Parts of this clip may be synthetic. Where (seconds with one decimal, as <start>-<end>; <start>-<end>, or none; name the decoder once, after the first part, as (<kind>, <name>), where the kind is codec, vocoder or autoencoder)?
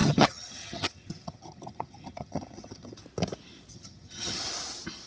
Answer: 0.0-3.0 (vocoder, HiFi-GAN); 3.7-4.4